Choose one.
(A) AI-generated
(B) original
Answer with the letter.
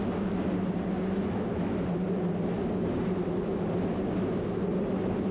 B